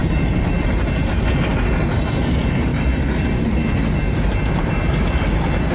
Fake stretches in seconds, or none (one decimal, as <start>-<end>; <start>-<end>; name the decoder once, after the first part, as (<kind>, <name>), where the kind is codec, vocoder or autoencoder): none